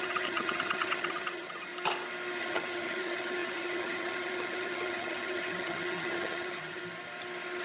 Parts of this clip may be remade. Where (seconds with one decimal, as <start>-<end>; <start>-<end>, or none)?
0.0-1.7; 2.4-6.8